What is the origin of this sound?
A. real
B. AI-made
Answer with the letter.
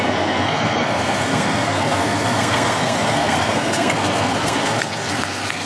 B